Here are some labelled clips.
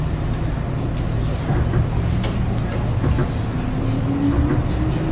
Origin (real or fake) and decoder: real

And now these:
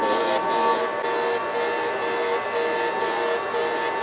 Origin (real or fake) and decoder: real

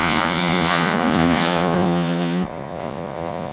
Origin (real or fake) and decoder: fake, vocoder, Vocos